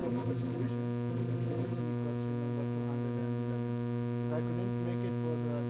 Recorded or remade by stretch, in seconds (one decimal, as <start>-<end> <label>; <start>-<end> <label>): 0.0-0.7 remade; 0.7-1.1 recorded; 1.1-1.8 remade; 1.8-5.7 recorded